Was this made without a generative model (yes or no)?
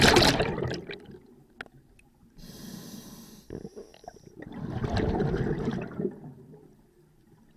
yes